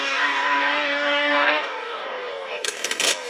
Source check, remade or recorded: remade